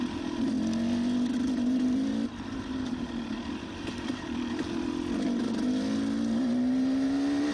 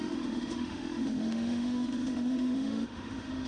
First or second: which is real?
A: first